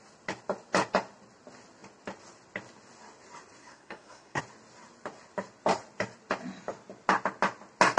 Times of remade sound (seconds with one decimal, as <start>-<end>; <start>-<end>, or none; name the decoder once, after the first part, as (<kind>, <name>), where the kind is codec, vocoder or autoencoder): 3.6-4.4 (codec, SNAC)